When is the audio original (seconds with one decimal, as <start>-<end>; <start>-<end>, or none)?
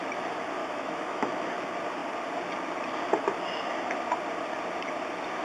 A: 0.0-0.6; 1.5-5.4